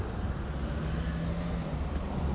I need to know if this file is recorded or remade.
recorded